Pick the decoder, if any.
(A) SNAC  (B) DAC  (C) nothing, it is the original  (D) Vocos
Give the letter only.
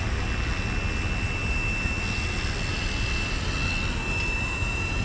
C